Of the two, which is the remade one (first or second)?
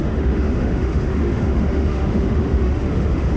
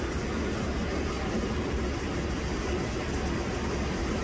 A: first